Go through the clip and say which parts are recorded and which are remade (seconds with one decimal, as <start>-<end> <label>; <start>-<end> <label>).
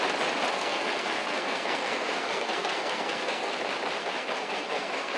0.0-0.5 recorded; 0.5-3.6 remade; 3.6-4.0 recorded; 4.0-5.2 remade